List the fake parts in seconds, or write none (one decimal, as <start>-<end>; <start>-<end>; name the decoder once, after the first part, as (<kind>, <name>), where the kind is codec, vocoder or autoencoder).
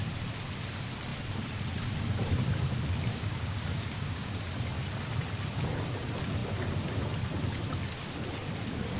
3.1-4.4 (codec, DAC)